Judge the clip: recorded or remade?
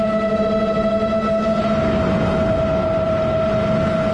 recorded